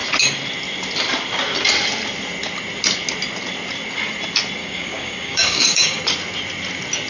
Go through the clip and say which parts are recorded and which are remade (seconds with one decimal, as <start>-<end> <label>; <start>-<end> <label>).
0.0-4.6 recorded; 4.6-6.0 remade; 6.0-7.1 recorded